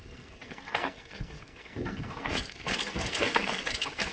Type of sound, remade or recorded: remade